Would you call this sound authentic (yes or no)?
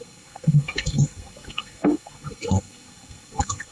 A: no